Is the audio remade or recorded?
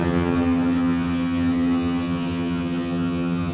remade